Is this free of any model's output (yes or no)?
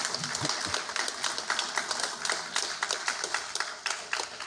yes